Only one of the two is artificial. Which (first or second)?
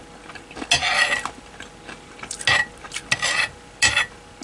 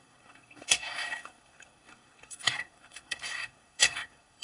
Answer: second